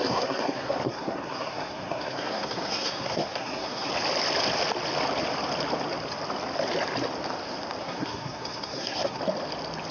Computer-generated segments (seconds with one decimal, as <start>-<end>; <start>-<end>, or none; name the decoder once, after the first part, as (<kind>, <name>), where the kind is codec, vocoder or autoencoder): 0.0-3.9 (codec, SNAC); 7.8-9.2